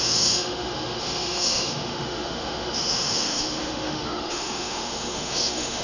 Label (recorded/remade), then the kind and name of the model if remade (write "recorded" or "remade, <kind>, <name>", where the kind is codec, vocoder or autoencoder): remade, autoencoder, DAC-VAE